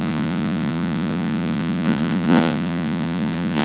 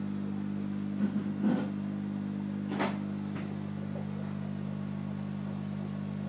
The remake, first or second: first